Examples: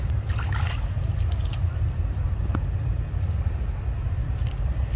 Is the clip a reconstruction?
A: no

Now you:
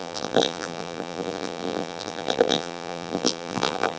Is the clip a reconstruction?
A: yes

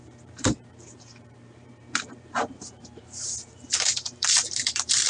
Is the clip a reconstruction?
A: yes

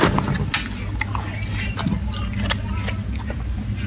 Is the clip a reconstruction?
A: no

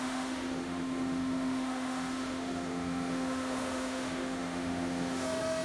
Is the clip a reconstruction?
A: yes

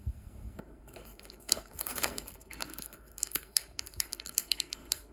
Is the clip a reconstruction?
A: yes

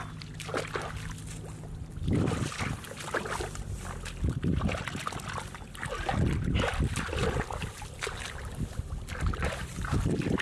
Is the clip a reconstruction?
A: no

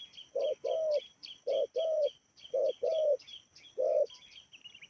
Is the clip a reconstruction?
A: yes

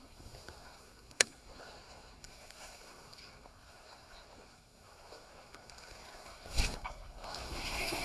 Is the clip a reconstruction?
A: yes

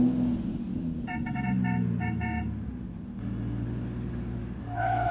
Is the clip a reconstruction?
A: no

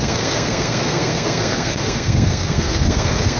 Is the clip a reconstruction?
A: yes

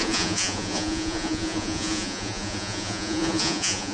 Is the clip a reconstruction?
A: yes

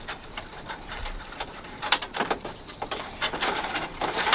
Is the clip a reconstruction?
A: yes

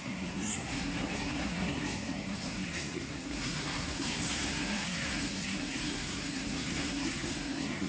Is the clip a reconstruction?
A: yes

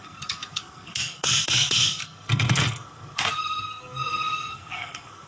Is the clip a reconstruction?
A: yes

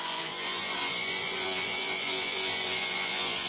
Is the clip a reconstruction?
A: yes